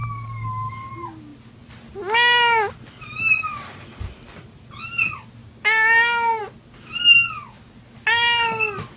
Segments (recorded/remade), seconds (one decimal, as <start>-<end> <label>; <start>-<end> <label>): 0.0-0.9 remade; 0.9-5.4 recorded; 5.4-6.4 remade; 6.4-9.0 recorded

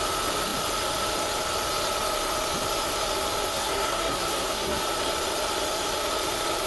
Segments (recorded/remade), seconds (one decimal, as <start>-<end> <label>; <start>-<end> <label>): 0.0-3.5 recorded; 3.5-4.8 remade; 4.8-6.7 recorded

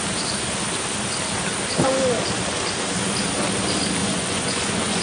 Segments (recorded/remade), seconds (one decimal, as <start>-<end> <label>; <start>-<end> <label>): 0.0-4.0 recorded; 4.0-5.0 remade

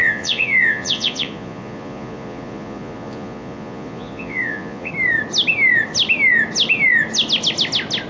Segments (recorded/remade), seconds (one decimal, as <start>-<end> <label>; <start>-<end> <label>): 0.0-4.9 remade; 4.9-8.1 recorded

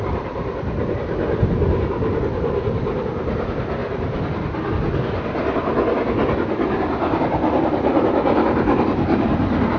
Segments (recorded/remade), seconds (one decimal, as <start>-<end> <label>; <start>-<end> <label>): 0.0-9.8 recorded

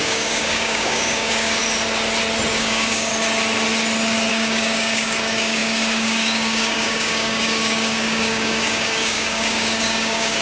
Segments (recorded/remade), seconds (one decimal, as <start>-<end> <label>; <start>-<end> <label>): 0.0-1.6 remade; 1.6-2.5 recorded; 2.5-3.1 remade; 3.1-4.3 recorded; 4.3-10.4 remade